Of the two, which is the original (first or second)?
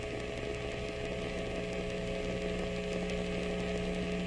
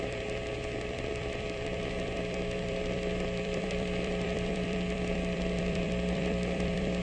first